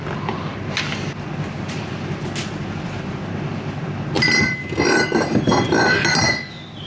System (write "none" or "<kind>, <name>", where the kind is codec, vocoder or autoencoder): none